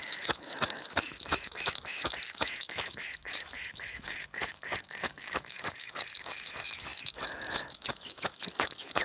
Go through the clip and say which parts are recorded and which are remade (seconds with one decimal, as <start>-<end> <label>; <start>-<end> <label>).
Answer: 0.0-9.0 remade